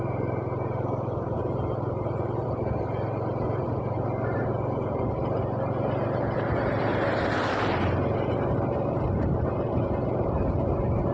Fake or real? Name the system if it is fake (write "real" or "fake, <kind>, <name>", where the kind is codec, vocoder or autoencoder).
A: fake, vocoder, BigVGAN v2